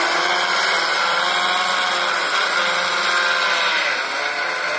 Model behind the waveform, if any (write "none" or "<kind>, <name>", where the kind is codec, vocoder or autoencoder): none